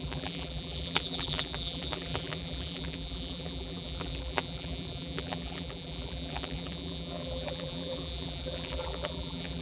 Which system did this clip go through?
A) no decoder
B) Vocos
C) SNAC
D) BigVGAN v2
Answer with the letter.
D